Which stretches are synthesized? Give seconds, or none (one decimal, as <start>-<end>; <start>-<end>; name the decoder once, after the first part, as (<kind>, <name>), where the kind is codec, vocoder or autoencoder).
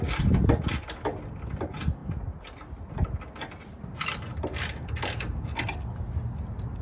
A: none